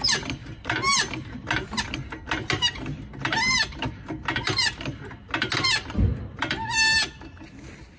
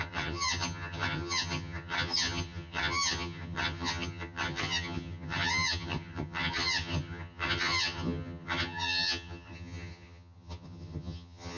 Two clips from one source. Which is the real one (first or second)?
first